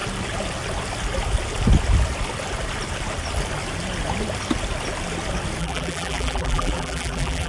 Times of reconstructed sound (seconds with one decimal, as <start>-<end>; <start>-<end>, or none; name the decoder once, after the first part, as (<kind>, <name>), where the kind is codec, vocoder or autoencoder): 5.6-7.5 (vocoder, BigVGAN v2)